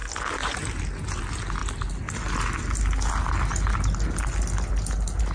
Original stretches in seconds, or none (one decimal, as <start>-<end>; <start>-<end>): 0.0-5.3